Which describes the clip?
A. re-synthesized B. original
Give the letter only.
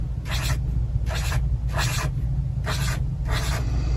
B